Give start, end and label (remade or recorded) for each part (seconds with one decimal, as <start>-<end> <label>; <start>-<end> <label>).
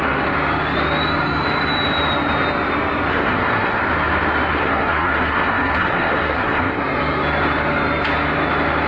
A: 0.0-3.1 recorded; 3.1-3.8 remade; 3.8-4.5 recorded; 4.5-6.8 remade; 6.8-8.9 recorded